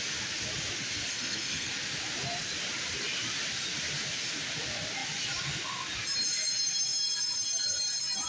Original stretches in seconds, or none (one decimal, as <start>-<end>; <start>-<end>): 0.0-1.1; 1.7-8.3